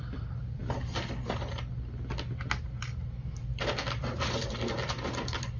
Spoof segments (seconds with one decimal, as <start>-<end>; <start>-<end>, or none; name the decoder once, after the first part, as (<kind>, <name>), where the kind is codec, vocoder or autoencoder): none